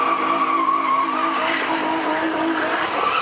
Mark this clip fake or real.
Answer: real